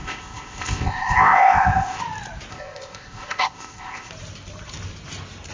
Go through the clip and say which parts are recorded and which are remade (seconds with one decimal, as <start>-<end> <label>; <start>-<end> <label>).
0.0-2.0 remade; 2.0-2.5 recorded; 2.5-4.1 remade; 4.1-5.5 recorded